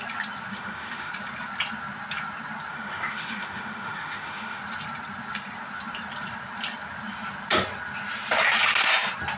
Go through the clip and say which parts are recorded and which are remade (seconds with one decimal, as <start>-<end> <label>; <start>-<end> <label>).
0.0-0.5 recorded; 0.5-1.1 remade; 1.1-2.7 recorded; 2.7-4.6 remade; 4.6-9.4 recorded